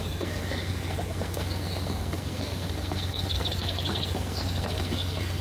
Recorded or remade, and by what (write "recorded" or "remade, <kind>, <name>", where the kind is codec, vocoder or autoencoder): remade, codec, SNAC